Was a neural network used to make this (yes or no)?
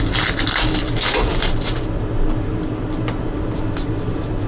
no